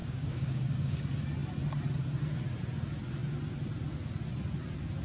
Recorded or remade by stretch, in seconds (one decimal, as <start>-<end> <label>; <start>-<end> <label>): 0.0-1.0 remade; 1.0-5.0 recorded